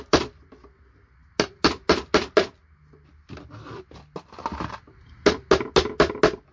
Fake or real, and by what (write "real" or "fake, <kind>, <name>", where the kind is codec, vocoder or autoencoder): real